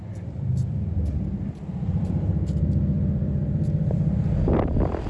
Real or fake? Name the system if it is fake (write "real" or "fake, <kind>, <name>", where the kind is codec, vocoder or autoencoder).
fake, vocoder, BigVGAN v2